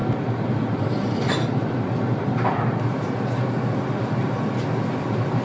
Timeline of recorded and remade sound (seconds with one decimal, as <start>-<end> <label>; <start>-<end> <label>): 0.0-5.4 recorded

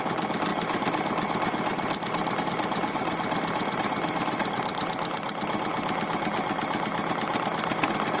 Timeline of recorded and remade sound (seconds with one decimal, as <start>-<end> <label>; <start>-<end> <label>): 0.0-8.2 recorded

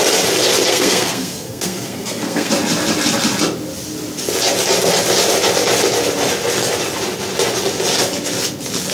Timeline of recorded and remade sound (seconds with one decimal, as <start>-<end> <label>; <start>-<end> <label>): 0.0-0.7 recorded; 0.7-2.5 remade; 2.5-8.9 recorded

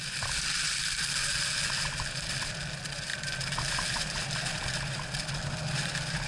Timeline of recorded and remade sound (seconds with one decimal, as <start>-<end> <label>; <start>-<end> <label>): 0.0-6.3 recorded